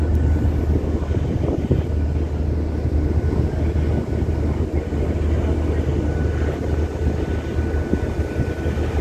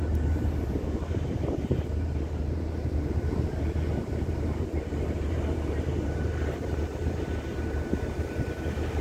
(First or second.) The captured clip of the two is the first